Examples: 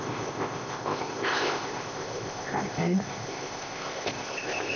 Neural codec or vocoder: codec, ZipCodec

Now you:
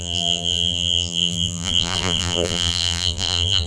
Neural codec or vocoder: vocoder, BigVGAN v2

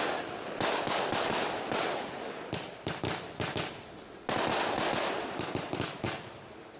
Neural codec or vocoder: none